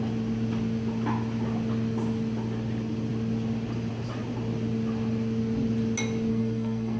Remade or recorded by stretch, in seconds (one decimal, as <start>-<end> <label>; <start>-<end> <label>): 0.0-6.3 recorded; 6.3-7.0 remade